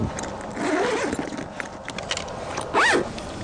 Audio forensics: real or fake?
real